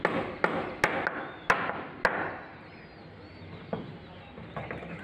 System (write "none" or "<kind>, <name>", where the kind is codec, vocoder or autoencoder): none